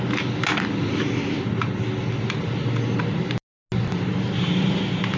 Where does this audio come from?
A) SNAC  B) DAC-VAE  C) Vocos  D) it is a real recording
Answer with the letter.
D